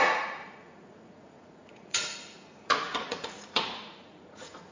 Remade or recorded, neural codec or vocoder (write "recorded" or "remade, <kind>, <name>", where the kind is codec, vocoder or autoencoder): remade, vocoder, Vocos